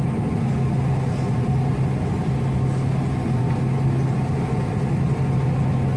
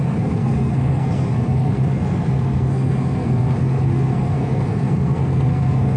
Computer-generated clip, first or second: second